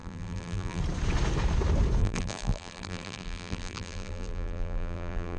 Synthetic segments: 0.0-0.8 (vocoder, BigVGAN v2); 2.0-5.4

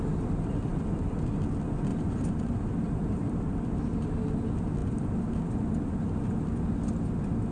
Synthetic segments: 1.9-4.1 (vocoder, BigVGAN v2)

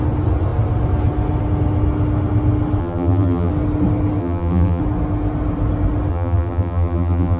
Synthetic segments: 2.8-3.5 (vocoder, BigVGAN v2); 4.2-4.8; 6.1-7.4

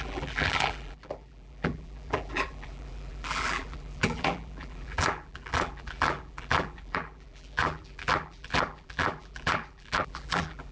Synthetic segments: 0.0-10.7 (vocoder, BigVGAN v2)

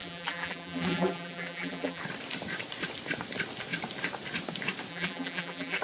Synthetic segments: 0.0-2.0 (vocoder, BigVGAN v2); 4.9-5.8

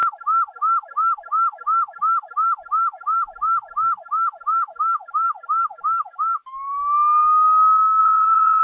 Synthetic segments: 8.0-8.6 (vocoder, BigVGAN v2)

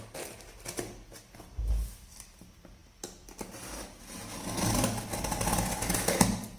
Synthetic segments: none